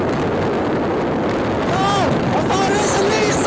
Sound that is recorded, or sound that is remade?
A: recorded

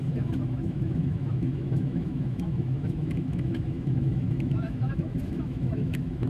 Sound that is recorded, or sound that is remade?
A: remade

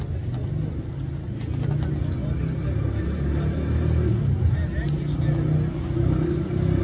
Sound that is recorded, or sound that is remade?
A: recorded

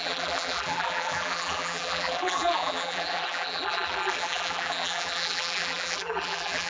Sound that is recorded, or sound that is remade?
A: remade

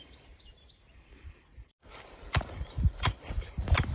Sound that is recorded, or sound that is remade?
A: remade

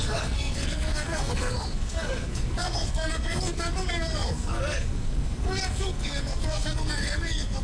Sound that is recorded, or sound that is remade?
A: remade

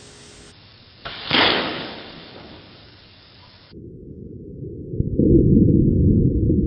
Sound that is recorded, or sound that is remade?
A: remade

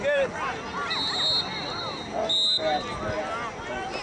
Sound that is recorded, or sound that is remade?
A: recorded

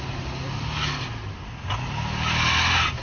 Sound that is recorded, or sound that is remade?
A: recorded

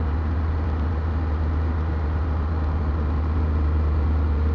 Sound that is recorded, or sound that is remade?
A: recorded